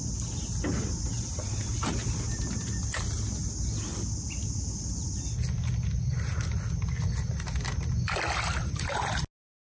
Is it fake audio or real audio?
real